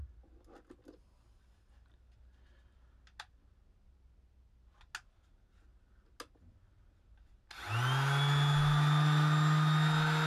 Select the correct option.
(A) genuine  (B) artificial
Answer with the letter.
A